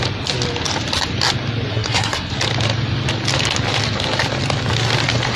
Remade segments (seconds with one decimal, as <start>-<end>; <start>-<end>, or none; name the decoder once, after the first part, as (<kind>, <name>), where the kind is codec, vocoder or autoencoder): 1.7-2.3 (codec, SNAC)